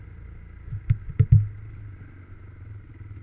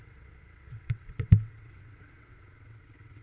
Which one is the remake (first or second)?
second